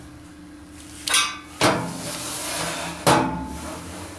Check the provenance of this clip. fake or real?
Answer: real